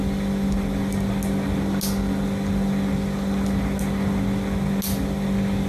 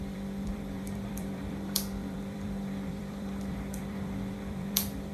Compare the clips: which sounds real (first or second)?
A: first